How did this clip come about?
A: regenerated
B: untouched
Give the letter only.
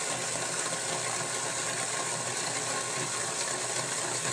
B